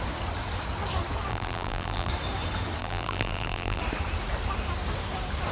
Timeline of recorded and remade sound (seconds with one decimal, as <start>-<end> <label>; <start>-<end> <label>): 0.0-1.3 recorded; 1.3-2.1 remade; 2.1-2.8 recorded; 2.8-3.8 remade; 3.8-5.5 recorded